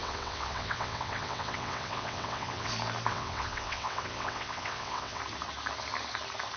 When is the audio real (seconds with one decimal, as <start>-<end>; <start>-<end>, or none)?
2.7-3.1; 5.2-6.6